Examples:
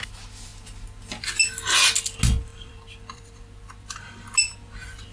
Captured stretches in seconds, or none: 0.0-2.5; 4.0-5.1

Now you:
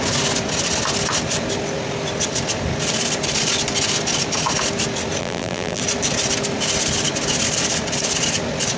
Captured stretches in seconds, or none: 0.0-5.2; 5.8-8.8

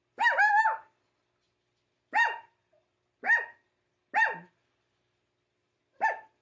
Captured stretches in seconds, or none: 0.0-6.4

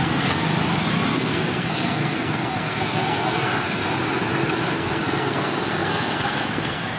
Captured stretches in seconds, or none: 0.5-1.2; 3.8-4.6

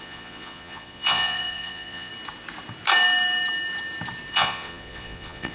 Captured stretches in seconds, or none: 2.1-4.3

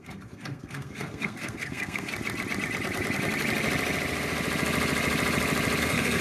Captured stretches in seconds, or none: 2.1-5.8

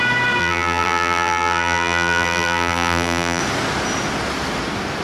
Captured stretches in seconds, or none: 0.0-0.4; 3.4-5.0